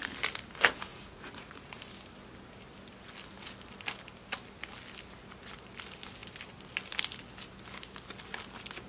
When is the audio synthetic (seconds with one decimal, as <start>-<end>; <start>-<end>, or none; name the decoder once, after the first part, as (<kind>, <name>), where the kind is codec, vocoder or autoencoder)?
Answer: 0.9-1.8 (vocoder, Vocos)